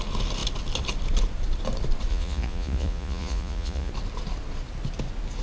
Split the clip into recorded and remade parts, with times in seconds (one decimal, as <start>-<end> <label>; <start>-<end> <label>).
0.0-2.1 recorded; 2.1-3.9 remade; 3.9-5.4 recorded